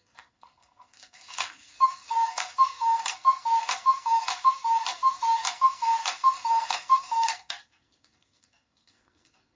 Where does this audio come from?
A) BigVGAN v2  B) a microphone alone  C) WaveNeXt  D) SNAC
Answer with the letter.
D